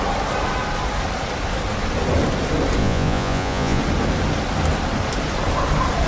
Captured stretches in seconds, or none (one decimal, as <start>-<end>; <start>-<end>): 0.0-2.8; 3.8-6.1